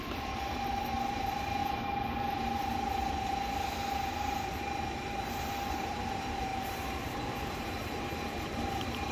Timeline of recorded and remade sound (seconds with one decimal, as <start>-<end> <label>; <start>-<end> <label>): 0.0-1.6 remade; 1.6-4.1 recorded; 4.1-5.2 remade; 5.2-5.7 recorded; 5.7-9.1 remade